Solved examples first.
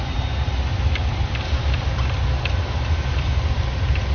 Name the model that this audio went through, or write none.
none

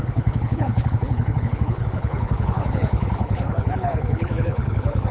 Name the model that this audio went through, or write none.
codec, HILCodec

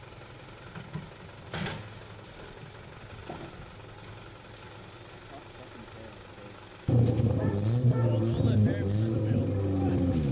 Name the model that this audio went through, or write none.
none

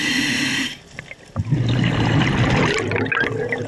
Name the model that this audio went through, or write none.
none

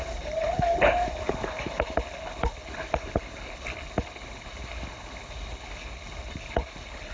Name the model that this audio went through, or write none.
codec, HILCodec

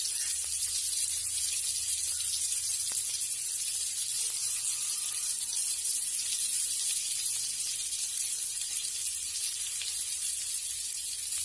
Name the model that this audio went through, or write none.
none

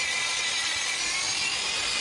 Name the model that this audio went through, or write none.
none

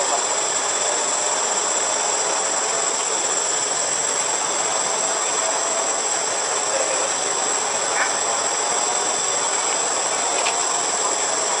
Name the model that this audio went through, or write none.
none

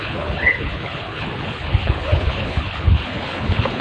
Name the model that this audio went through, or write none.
codec, HILCodec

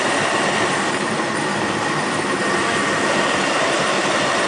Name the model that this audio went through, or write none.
none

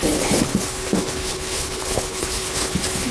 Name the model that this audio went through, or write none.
codec, HILCodec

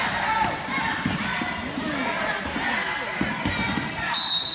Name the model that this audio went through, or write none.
none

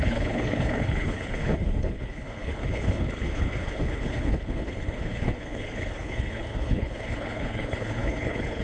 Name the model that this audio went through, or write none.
codec, HILCodec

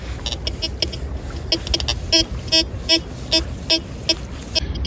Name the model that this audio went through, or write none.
none